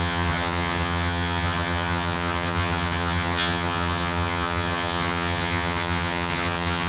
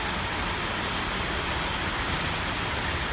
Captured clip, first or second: second